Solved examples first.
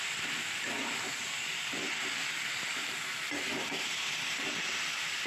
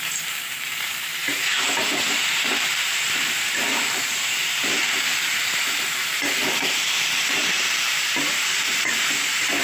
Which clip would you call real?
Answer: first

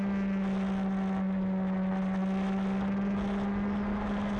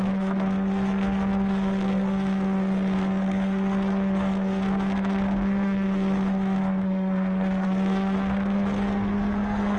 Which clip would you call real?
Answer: first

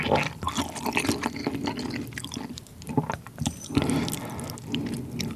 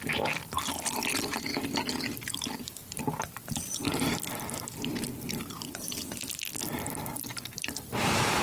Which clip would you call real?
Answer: first